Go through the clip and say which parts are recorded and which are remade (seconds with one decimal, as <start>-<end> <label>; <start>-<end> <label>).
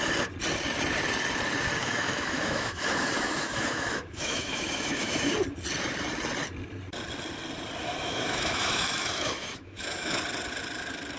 0.0-1.8 recorded; 1.8-5.3 remade; 5.3-7.8 recorded; 7.8-10.2 remade; 10.2-11.2 recorded